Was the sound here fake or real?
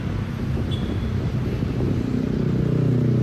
real